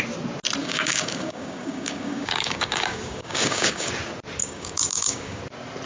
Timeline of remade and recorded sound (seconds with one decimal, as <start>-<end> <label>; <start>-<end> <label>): 0.0-0.6 recorded; 0.6-3.9 remade; 3.9-4.4 recorded; 4.4-5.4 remade; 5.4-5.9 recorded